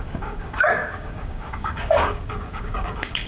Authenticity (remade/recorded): remade